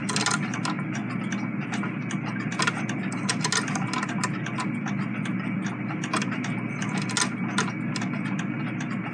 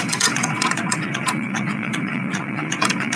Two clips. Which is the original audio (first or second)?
first